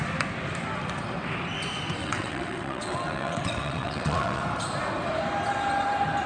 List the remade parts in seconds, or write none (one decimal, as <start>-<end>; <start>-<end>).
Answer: 2.0-4.4

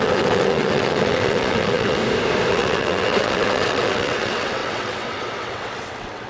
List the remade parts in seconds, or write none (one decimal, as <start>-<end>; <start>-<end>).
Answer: 0.0-2.0; 2.5-6.3